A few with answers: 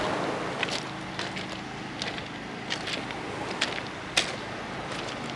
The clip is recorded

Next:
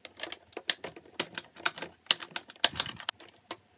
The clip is recorded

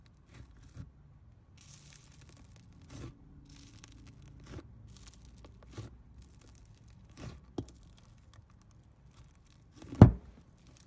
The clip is recorded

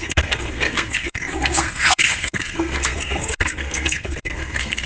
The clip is remade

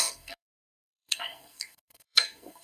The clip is remade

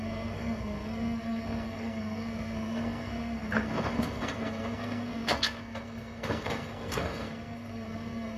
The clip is remade